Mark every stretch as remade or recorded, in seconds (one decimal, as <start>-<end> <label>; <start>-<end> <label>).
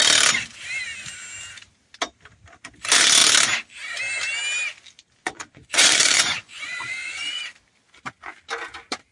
0.0-5.2 recorded; 5.2-7.4 remade; 7.4-9.1 recorded